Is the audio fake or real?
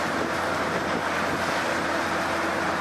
real